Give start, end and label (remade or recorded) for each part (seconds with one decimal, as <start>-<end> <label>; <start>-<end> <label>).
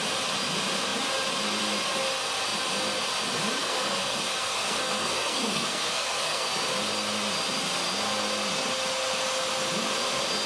0.0-3.6 recorded; 3.6-6.5 remade; 6.5-10.5 recorded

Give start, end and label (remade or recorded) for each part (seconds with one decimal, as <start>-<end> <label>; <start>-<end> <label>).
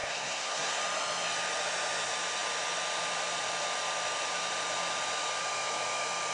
0.0-0.8 remade; 0.8-6.3 recorded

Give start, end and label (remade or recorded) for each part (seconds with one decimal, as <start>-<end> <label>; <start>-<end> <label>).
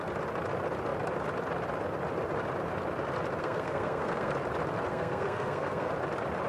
0.0-3.4 recorded; 3.4-4.3 remade; 4.3-4.9 recorded; 4.9-5.9 remade; 5.9-6.5 recorded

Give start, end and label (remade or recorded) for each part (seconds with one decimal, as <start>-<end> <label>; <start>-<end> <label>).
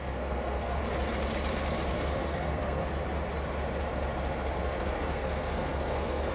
0.0-0.8 remade; 0.8-1.9 recorded; 1.9-2.8 remade; 2.8-4.6 recorded; 4.6-6.3 remade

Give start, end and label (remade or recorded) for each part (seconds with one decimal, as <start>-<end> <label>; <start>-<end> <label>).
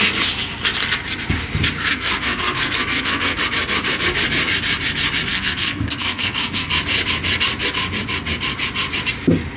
0.0-1.9 recorded; 1.9-3.4 remade; 3.4-5.3 recorded; 5.3-6.7 remade; 6.7-9.6 recorded